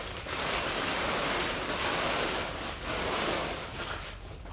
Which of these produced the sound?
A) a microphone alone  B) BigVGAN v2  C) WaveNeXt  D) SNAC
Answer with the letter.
A